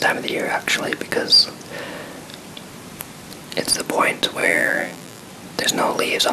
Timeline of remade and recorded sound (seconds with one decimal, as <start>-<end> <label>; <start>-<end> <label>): 0.0-4.4 recorded; 4.4-5.2 remade; 5.2-6.3 recorded